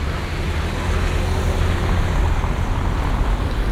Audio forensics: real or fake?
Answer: real